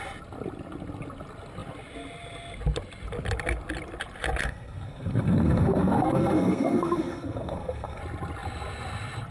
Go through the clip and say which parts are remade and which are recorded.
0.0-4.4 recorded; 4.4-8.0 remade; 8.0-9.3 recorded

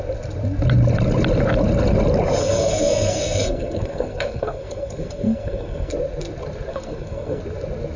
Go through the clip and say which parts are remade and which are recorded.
0.0-2.4 recorded; 2.4-5.9 remade; 5.9-6.7 recorded; 6.7-7.4 remade; 7.4-8.0 recorded

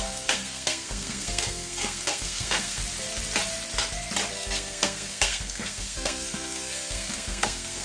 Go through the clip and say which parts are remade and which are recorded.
0.0-2.8 remade; 2.8-4.3 recorded; 4.3-7.8 remade